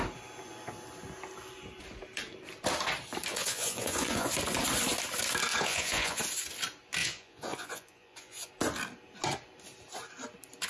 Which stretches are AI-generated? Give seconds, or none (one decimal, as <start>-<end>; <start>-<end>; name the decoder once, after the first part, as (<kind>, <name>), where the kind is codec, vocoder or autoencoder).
3.3-4.3 (vocoder, Vocos); 5.5-6.2; 7.0-8.5